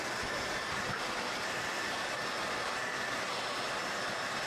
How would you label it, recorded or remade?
recorded